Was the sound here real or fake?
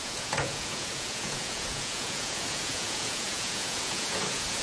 fake